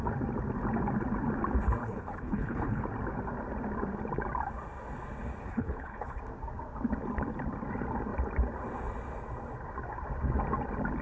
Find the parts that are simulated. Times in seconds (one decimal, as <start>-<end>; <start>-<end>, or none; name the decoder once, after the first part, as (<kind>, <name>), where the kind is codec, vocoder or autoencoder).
1.8-2.8 (codec, HILCodec); 5.4-6.2